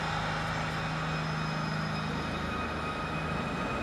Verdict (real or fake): real